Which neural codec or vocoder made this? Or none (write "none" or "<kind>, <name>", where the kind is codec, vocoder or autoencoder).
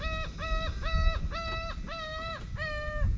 none